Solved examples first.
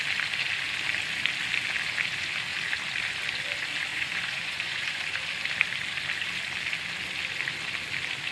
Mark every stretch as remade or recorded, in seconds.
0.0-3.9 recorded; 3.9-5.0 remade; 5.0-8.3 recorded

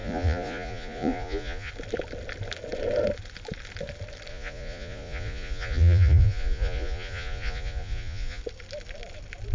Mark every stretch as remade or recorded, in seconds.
0.0-1.7 remade; 1.7-4.3 recorded; 4.3-8.4 remade; 8.4-9.5 recorded

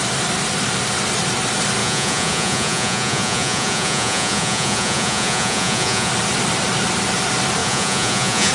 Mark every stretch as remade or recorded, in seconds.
0.0-1.8 recorded; 1.8-6.1 remade; 6.1-7.6 recorded; 7.6-8.5 remade